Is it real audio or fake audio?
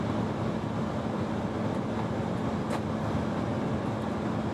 real